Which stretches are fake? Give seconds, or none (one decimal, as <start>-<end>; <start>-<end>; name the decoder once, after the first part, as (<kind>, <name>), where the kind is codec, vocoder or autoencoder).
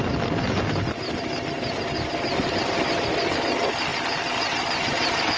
none